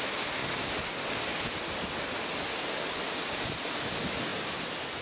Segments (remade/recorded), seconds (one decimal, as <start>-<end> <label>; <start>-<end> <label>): 0.0-5.0 recorded